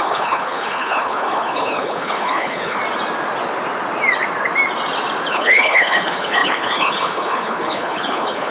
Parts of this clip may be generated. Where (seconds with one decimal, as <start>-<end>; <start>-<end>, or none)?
0.0-2.8; 5.3-8.5